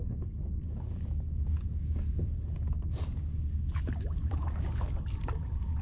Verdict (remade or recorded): remade